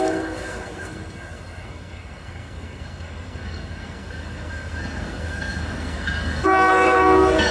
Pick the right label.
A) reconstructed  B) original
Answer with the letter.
A